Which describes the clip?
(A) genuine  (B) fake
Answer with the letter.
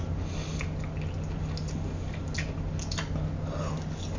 A